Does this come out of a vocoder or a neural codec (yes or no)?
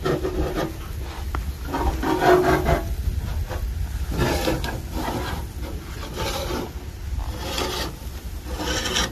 no